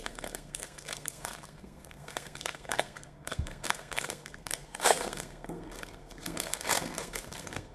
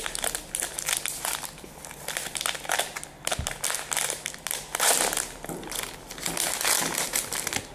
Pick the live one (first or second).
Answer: second